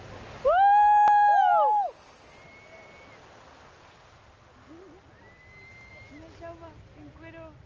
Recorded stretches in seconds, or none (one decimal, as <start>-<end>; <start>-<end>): 0.0-7.7